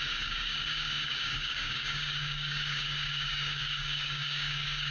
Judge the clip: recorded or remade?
remade